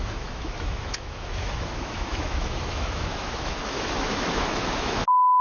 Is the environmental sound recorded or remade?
remade